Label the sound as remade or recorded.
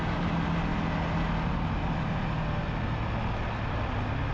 recorded